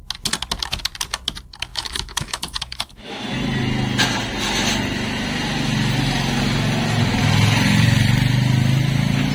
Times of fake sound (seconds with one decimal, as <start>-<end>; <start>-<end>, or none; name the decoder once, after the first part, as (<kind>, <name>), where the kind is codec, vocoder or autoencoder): 1.7-3.2 (autoencoder, DAC-VAE)